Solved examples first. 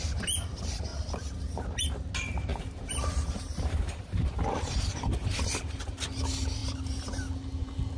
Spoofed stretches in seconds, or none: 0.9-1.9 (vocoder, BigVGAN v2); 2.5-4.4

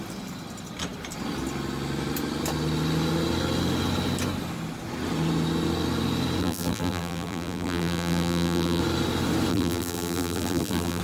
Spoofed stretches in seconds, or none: 6.4-8.8 (vocoder, BigVGAN v2); 9.5-11.0

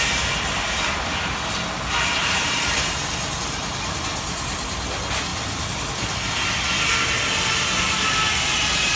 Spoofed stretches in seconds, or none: 2.2-3.4 (vocoder, BigVGAN v2); 5.3-5.8

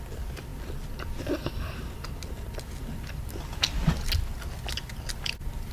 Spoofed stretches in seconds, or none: none

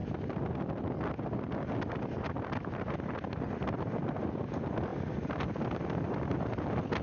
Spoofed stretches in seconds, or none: 0.0-4.2 (vocoder, BigVGAN v2); 4.9-6.5

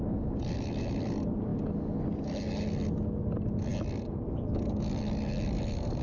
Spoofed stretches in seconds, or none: none

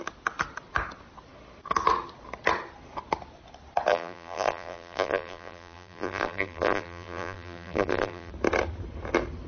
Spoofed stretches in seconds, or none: 3.9-8.3 (vocoder, BigVGAN v2)

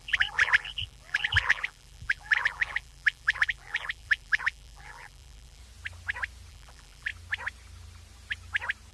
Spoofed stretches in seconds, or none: 0.0-5.6 (vocoder, BigVGAN v2); 6.5-7.1